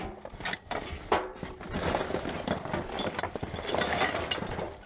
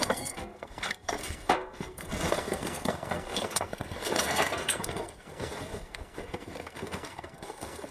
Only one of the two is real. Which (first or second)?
first